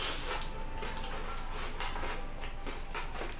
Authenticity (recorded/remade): recorded